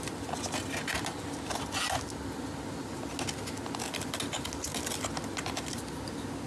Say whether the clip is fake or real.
real